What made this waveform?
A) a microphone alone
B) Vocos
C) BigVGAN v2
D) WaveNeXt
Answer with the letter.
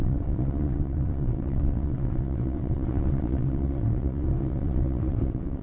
D